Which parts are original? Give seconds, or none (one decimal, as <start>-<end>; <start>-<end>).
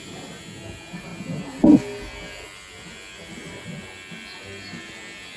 0.0-5.4